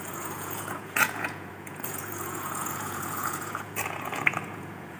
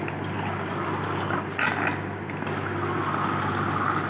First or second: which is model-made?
first